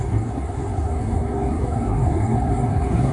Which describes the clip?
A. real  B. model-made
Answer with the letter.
B